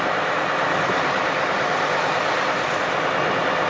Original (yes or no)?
yes